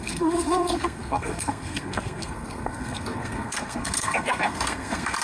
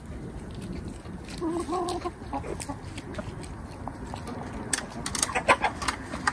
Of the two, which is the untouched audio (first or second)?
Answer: second